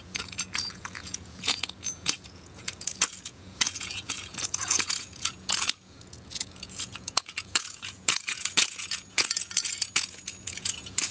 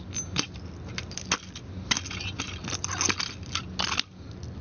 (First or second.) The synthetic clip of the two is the first